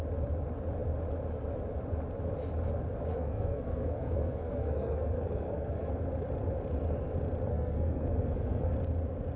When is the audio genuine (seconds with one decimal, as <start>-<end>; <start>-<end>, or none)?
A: 0.0-3.1; 5.9-7.5; 8.7-9.4